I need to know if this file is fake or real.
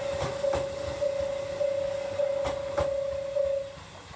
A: real